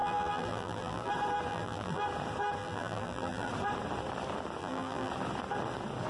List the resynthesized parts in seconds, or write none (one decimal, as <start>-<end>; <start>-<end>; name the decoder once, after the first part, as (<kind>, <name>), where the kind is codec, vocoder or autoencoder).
0.0-1.1 (vocoder, BigVGAN v2); 1.5-2.0; 2.6-3.5; 4.6-5.1